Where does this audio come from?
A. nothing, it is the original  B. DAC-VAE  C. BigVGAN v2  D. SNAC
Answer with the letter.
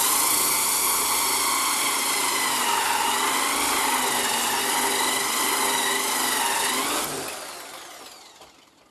A